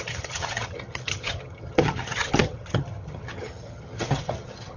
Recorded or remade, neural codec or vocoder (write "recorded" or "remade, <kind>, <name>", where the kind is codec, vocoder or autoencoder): remade, vocoder, HiFi-GAN